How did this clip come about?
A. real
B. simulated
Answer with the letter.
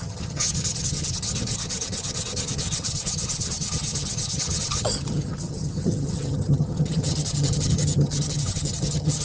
B